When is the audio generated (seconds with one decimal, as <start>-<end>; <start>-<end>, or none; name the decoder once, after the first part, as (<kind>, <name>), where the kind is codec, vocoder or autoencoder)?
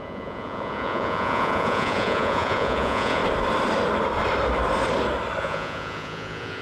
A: 0.0-3.2 (vocoder, Vocos); 5.4-6.6